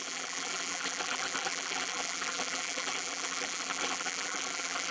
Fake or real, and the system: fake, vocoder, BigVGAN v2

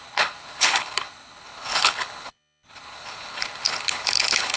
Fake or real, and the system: fake, codec, HILCodec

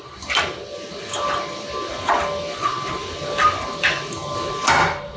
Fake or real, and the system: real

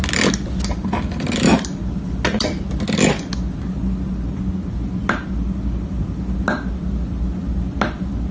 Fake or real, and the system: real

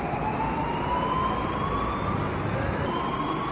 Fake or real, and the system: real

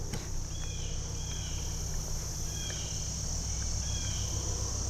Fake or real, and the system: real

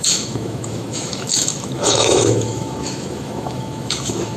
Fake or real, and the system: fake, autoencoder, DAC-VAE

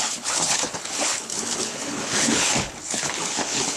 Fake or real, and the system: fake, codec, HILCodec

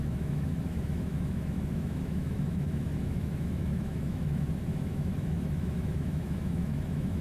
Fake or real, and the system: fake, autoencoder, DAC-VAE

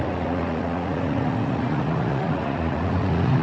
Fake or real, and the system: fake, vocoder, Vocos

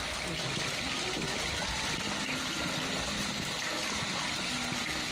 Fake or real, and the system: real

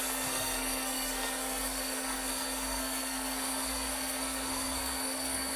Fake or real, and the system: fake, codec, SNAC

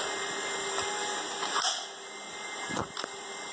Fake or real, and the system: real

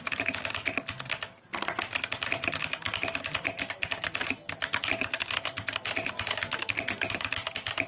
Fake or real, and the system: real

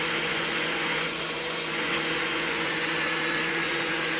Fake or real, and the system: fake, vocoder, Vocos